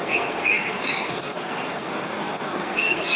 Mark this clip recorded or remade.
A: remade